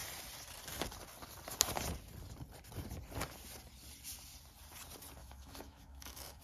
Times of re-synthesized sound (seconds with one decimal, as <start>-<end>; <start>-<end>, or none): 5.2-6.4